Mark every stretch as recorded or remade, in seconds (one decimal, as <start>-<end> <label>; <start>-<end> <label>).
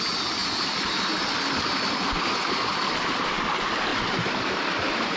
0.0-2.7 recorded; 2.7-3.3 remade; 3.3-3.9 recorded; 3.9-5.2 remade